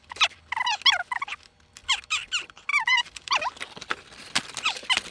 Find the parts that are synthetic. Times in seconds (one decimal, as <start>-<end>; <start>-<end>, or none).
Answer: 1.8-2.3; 2.7-3.5

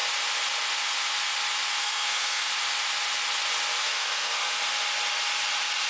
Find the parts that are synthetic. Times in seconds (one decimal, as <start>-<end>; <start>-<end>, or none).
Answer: 1.8-2.5; 3.8-4.6